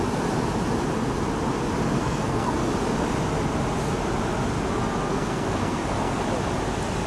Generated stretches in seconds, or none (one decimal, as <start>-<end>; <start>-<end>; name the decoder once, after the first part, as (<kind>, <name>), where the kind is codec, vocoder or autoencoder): 2.0-2.7 (codec, SNAC); 5.1-6.2